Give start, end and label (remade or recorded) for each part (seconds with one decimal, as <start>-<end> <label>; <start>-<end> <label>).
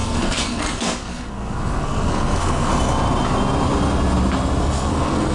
0.0-2.7 remade; 2.7-4.6 recorded; 4.6-5.3 remade